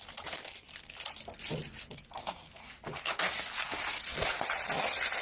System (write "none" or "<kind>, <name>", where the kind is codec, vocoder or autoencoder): none